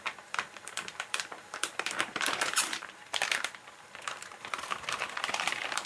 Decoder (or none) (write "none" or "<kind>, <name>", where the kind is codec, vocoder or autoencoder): vocoder, BigVGAN v2